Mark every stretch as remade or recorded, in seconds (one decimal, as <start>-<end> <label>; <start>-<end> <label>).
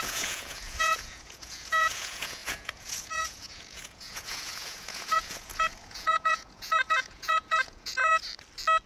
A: 0.0-8.1 remade; 8.1-8.9 recorded